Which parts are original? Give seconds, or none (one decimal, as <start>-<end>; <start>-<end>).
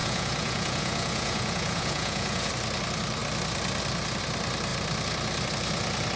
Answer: 2.5-6.2